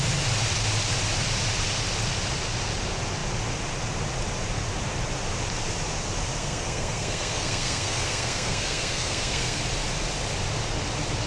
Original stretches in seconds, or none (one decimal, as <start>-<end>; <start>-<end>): 0.0-6.4; 9.6-11.3